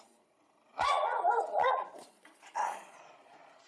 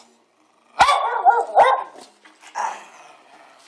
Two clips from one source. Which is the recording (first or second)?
second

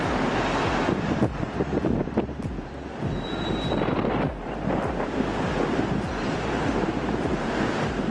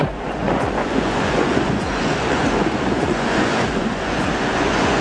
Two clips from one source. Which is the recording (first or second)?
first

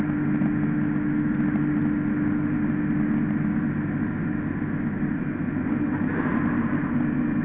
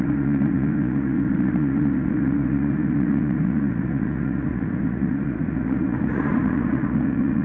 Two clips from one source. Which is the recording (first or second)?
first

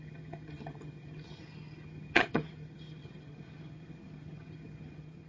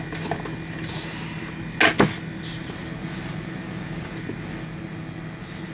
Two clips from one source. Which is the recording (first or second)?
second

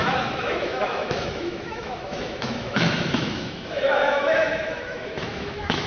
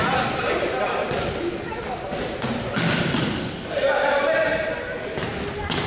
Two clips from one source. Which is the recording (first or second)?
second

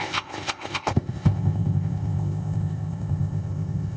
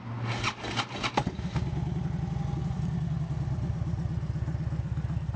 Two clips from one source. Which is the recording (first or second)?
second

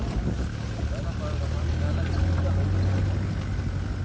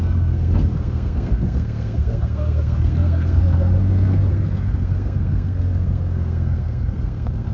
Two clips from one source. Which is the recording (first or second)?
first